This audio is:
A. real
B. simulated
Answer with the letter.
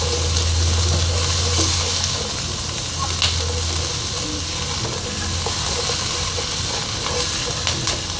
A